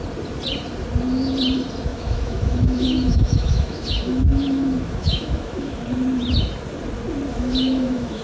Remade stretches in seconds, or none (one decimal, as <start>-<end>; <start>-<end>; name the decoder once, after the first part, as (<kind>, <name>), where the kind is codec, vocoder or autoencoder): 1.9-5.8 (autoencoder, DAC-VAE); 7.3-8.2